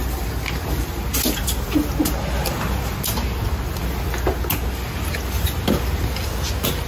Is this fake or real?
real